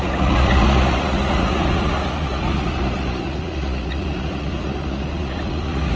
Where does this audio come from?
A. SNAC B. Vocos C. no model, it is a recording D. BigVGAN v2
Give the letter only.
B